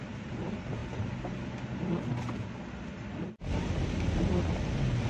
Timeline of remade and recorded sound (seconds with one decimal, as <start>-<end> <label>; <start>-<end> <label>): 0.0-5.1 recorded